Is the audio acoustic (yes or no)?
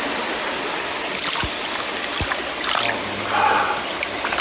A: yes